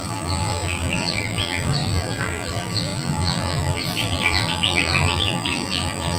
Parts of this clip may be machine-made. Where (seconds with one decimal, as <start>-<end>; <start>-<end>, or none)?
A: 0.0-6.2